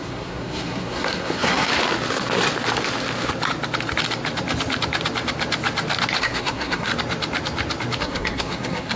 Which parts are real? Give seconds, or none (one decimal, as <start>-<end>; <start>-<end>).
1.7-6.2; 6.9-8.0